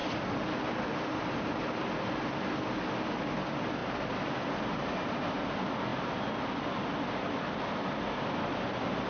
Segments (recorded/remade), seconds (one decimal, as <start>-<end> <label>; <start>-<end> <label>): 0.0-9.1 recorded